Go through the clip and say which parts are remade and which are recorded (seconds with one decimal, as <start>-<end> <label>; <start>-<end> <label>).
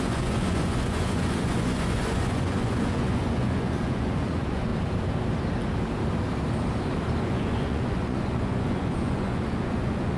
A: 0.0-4.7 remade; 4.7-7.2 recorded; 7.2-10.2 remade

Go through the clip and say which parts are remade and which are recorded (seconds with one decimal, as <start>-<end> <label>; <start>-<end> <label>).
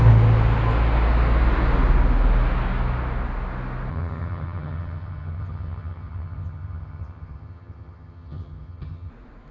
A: 0.0-3.9 recorded; 3.9-9.1 remade; 9.1-9.5 recorded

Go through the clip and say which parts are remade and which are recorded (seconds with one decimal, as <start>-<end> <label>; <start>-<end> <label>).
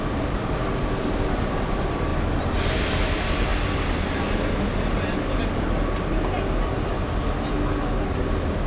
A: 0.0-8.7 recorded